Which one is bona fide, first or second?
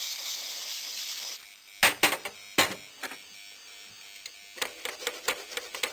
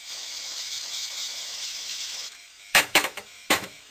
first